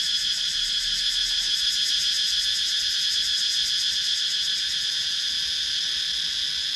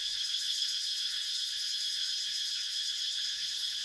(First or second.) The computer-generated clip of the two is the second